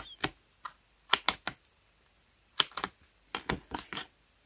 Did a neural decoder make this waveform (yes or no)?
no